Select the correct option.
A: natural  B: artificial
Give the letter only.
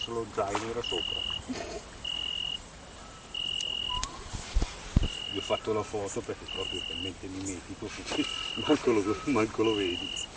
A